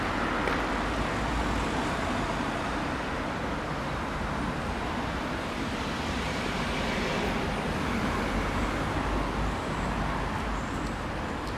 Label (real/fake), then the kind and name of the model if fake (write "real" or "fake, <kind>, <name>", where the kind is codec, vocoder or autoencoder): real